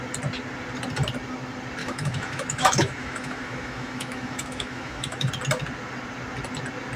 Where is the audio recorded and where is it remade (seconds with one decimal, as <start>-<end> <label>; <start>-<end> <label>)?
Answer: 0.0-1.8 recorded; 1.8-5.3 remade; 5.3-7.0 recorded